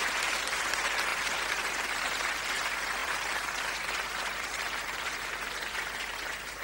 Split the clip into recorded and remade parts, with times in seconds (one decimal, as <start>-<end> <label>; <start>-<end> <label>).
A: 0.0-6.6 remade